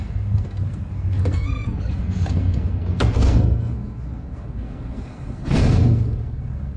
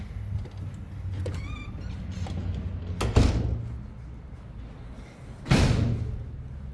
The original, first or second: second